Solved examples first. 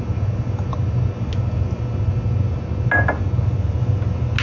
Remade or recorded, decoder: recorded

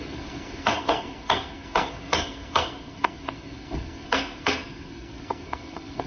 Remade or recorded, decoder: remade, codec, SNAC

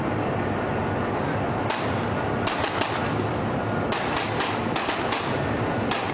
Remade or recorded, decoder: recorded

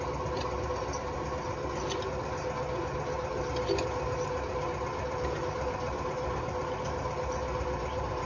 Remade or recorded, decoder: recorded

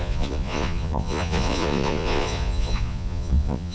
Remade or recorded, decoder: remade, vocoder, Vocos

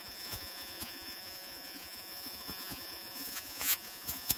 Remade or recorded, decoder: remade, vocoder, Vocos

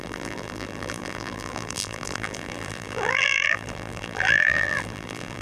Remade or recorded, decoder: remade, vocoder, BigVGAN v2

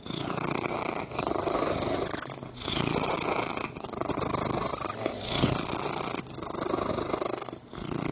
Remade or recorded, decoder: recorded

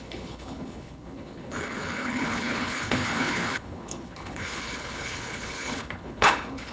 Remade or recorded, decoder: remade, codec, HILCodec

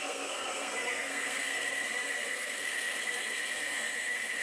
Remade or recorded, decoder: remade, codec, SNAC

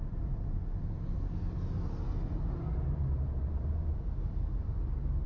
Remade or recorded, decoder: recorded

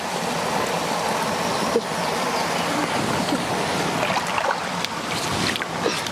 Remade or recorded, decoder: recorded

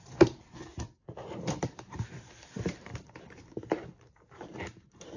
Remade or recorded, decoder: remade, vocoder, BigVGAN v2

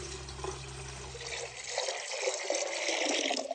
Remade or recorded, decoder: recorded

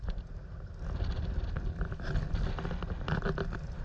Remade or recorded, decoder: recorded